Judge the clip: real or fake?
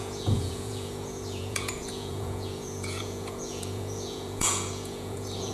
fake